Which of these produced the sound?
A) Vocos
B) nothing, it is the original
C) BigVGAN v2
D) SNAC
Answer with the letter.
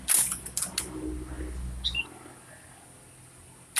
B